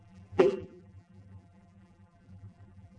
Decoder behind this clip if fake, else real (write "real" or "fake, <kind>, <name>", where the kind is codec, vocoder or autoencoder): fake, vocoder, BigVGAN v2